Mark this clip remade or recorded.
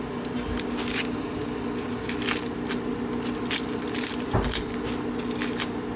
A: recorded